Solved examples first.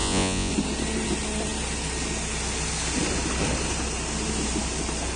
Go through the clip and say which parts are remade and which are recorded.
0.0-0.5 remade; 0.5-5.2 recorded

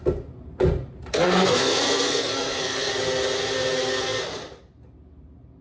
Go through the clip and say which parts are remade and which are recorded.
0.0-1.1 recorded; 1.1-2.9 remade; 2.9-5.6 recorded